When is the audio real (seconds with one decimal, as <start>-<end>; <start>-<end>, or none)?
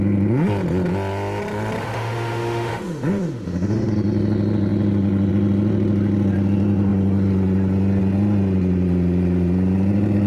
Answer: 0.0-1.8; 3.9-10.3